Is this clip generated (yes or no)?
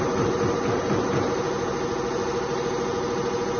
no